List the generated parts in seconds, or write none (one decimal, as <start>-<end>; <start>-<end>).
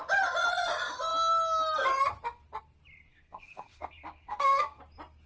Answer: 3.1-4.8